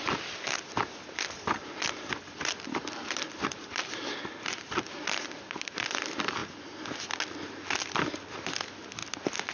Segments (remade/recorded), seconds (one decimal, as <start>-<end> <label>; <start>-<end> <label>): 0.0-9.5 recorded